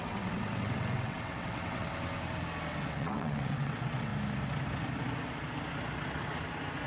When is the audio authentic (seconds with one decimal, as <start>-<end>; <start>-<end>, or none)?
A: 1.9-2.8; 4.1-6.9